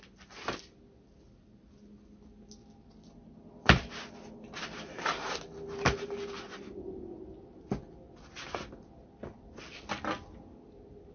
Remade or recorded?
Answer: recorded